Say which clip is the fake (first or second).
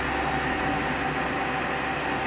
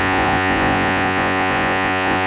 second